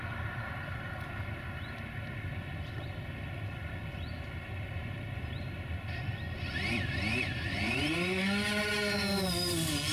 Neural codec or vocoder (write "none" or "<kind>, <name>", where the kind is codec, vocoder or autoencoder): none